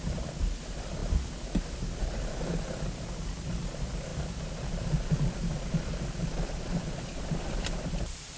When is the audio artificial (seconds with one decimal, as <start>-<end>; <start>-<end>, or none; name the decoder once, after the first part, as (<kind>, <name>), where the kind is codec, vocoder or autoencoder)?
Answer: 0.0-1.0 (vocoder, BigVGAN v2); 2.0-4.1; 7.5-8.4